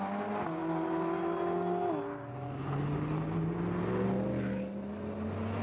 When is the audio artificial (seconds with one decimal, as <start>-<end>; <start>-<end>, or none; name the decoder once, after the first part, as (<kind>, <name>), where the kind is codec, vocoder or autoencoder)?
none